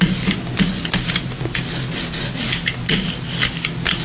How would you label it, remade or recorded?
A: recorded